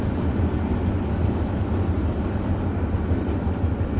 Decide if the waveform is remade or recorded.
recorded